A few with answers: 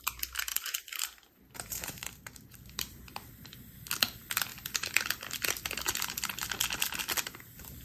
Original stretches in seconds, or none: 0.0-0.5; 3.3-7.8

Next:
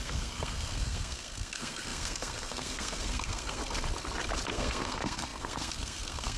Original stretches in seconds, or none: 3.6-4.5

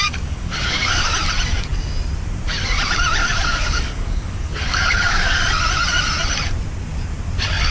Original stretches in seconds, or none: 1.1-3.2; 5.4-7.7

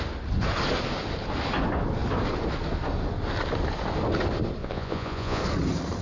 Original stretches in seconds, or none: 0.0-4.6; 5.4-6.0

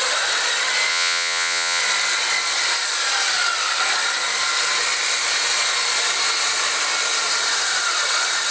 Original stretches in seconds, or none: 0.0-0.9; 1.8-8.5

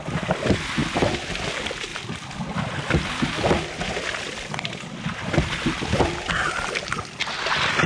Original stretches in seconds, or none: 0.0-1.9; 2.4-7.9

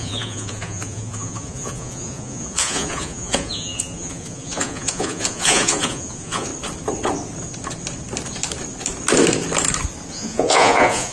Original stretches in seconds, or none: 6.5-10.1

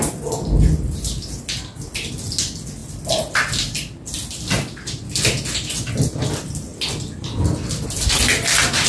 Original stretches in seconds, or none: 0.0-8.9